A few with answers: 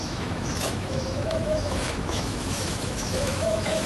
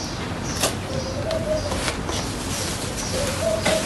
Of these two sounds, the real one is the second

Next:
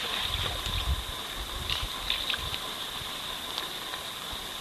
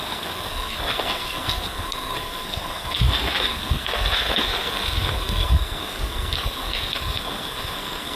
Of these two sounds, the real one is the first